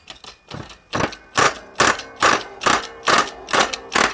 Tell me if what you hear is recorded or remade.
recorded